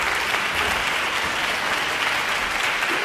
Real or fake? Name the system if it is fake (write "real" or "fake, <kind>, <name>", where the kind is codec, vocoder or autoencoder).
real